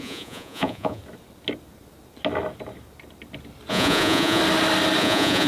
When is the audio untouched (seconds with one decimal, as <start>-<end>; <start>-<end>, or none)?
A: 1.0-3.7; 4.4-5.0